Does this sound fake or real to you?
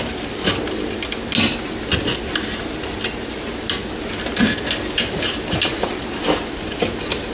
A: real